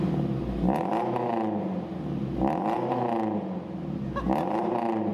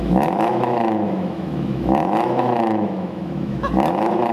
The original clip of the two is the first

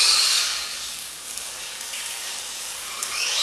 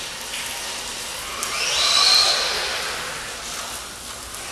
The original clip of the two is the second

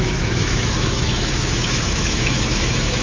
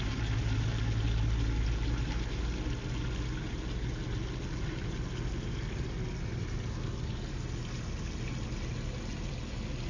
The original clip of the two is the second